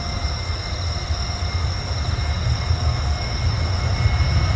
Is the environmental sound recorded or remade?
recorded